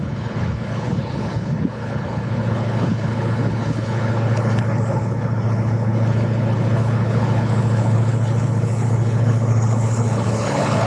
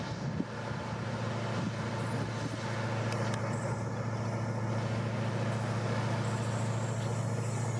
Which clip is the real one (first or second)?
second